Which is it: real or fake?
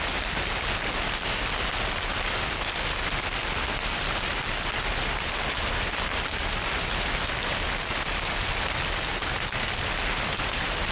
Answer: real